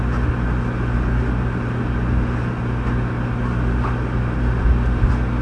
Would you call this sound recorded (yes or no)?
yes